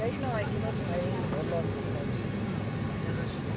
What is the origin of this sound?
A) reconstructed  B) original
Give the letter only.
B